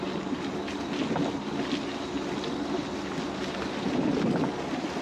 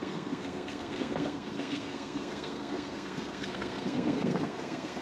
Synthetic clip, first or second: second